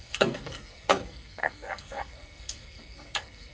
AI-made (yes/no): yes